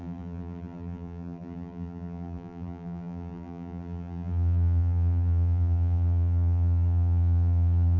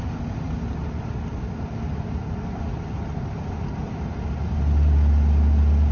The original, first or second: second